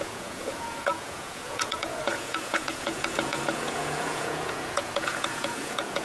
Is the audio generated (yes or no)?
yes